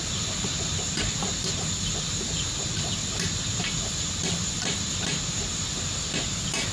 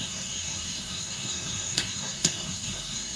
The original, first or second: first